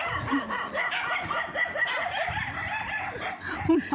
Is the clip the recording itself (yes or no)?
no